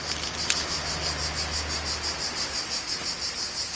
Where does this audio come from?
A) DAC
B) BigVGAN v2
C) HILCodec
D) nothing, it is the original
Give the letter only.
D